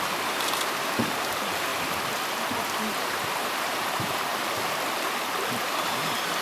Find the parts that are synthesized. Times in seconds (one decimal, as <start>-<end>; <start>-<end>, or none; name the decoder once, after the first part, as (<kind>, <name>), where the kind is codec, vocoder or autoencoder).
0.0-1.7 (vocoder, BigVGAN v2); 3.0-4.3; 5.8-6.4